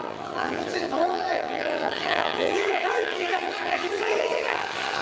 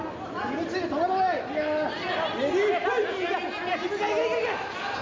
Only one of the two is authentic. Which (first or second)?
second